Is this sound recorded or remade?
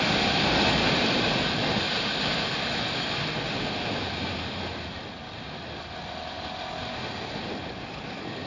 recorded